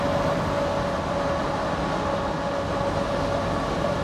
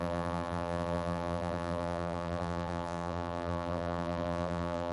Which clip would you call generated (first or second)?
second